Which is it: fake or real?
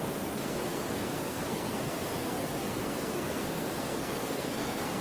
fake